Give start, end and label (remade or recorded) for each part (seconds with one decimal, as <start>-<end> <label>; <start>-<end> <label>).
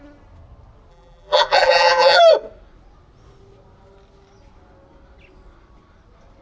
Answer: 0.0-0.9 recorded; 0.9-2.2 remade; 2.2-6.4 recorded